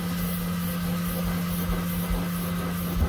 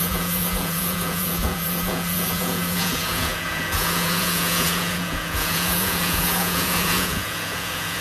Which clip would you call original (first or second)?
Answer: first